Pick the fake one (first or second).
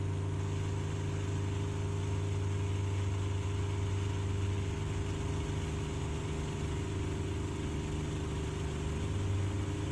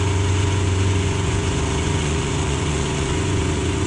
second